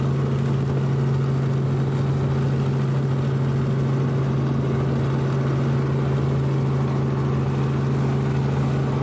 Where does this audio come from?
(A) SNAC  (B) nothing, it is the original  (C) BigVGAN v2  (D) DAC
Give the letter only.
B